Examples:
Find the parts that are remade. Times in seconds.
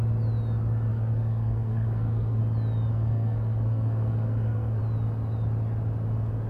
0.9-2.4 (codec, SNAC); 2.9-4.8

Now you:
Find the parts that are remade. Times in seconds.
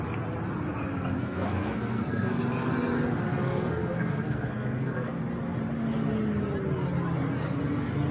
0.9-2.4 (codec, SNAC); 3.3-5.2